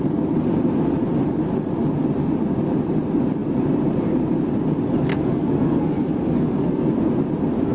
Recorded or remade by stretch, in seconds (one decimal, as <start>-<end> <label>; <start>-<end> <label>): 0.0-5.1 recorded; 5.1-6.9 remade; 6.9-7.7 recorded